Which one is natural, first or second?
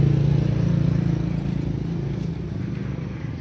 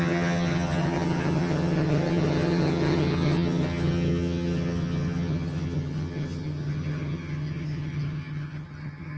first